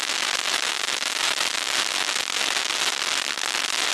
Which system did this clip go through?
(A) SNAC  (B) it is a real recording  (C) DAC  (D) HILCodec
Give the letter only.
B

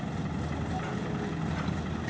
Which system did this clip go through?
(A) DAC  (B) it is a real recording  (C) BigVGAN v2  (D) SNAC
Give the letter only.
B